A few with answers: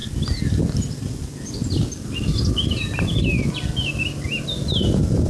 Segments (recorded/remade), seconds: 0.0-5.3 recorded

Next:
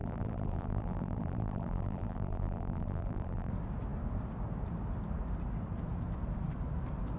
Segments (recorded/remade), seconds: 0.0-3.5 remade; 3.5-7.2 recorded